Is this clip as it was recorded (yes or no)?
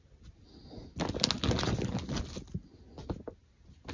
yes